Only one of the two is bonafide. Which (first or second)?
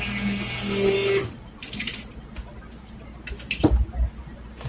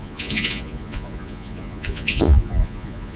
first